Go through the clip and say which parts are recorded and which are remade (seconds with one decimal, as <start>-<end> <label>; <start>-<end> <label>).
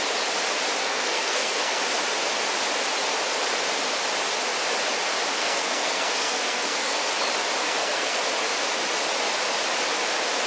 0.0-0.8 recorded; 0.8-1.8 remade; 1.8-5.4 recorded; 5.4-7.1 remade; 7.1-7.6 recorded; 7.6-8.2 remade; 8.2-10.5 recorded